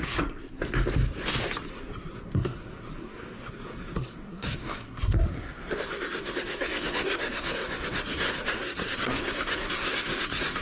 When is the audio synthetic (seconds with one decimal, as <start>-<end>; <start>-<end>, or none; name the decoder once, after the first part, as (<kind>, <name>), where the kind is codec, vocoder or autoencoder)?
0.0-0.6 (codec, SNAC); 1.7-10.6

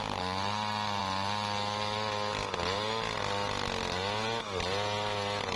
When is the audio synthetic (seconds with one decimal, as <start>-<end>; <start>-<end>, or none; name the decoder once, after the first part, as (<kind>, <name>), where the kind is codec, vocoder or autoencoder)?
none

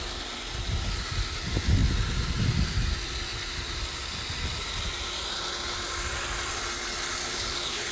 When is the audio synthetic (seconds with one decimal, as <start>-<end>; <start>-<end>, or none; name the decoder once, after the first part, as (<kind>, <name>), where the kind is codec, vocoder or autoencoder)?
7.2-7.9 (codec, HILCodec)

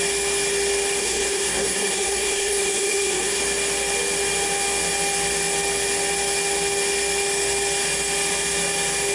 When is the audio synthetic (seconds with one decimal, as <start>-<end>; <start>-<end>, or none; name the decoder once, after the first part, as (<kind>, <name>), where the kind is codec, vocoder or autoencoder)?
1.0-3.4 (codec, SNAC)

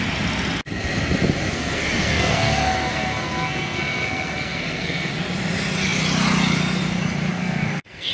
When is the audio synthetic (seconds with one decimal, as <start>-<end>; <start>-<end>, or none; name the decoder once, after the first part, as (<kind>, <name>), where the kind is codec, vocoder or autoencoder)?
1.5-5.1 (codec, SNAC); 7.3-8.1

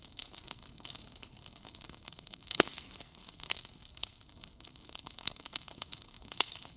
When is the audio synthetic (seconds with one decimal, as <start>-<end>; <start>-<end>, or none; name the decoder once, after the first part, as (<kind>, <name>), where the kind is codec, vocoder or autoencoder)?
0.0-6.8 (codec, SNAC)

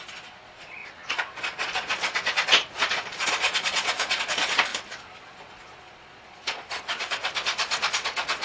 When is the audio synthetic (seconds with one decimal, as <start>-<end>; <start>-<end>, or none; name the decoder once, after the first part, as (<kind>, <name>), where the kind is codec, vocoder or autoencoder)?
0.0-7.2 (vocoder, Vocos); 7.9-8.4